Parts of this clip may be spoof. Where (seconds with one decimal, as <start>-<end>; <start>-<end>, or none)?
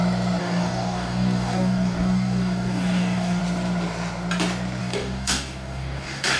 0.4-3.4; 4.8-6.4